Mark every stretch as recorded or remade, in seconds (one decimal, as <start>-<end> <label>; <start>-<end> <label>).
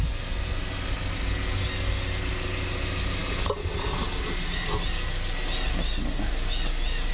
0.0-7.1 recorded